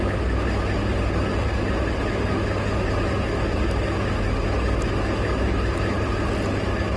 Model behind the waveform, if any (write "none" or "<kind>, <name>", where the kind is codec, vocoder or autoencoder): none